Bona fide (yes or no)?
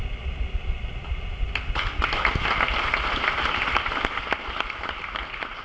yes